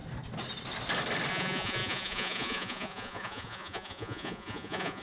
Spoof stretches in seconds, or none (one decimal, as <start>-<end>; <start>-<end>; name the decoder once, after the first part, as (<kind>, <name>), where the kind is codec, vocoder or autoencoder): 1.3-5.0 (vocoder, Vocos)